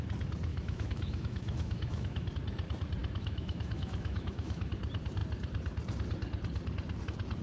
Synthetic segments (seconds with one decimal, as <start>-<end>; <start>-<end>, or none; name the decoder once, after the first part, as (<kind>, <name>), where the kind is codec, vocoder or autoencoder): 0.5-2.3 (autoencoder, DAC-VAE); 3.0-4.7